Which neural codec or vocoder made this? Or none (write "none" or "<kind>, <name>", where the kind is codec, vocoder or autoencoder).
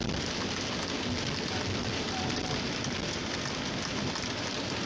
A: none